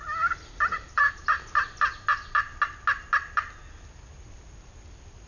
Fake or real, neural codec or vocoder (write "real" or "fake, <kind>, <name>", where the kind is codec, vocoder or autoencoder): real